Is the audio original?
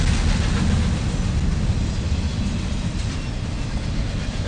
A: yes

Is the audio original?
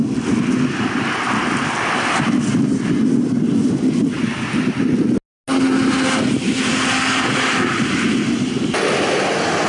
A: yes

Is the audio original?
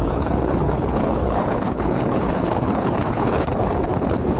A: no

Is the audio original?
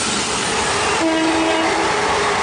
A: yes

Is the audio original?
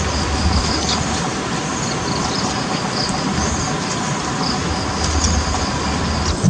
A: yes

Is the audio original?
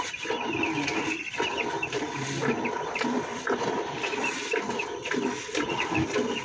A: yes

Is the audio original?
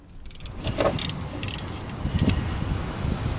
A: yes